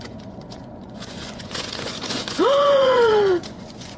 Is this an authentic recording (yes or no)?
no